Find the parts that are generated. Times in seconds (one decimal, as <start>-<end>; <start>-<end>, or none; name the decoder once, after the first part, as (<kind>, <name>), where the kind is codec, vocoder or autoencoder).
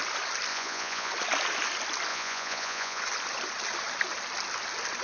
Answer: 0.5-1.1 (vocoder, Vocos); 2.1-3.0